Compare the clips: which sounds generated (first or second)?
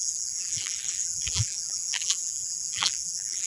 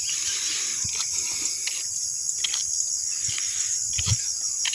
first